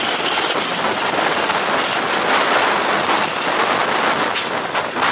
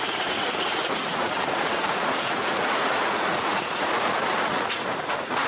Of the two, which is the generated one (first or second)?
second